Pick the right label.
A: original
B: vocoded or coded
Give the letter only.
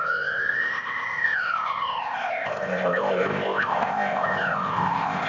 B